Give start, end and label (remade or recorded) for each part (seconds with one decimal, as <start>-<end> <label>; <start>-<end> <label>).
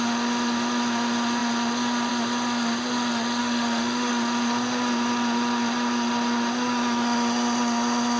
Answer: 0.0-3.4 recorded; 3.4-4.1 remade; 4.1-8.2 recorded